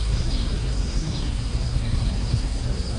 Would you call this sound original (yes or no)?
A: no